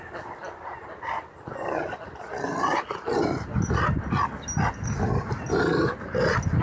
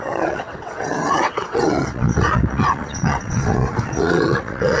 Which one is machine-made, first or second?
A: second